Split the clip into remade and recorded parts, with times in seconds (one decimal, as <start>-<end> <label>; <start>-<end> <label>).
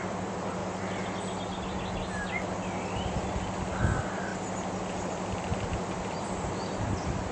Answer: 0.0-0.6 remade; 0.6-3.8 recorded; 3.8-4.3 remade; 4.3-4.9 recorded; 4.9-7.3 remade